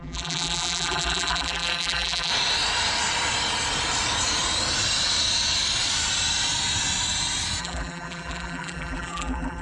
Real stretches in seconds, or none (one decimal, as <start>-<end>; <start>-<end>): 2.3-7.6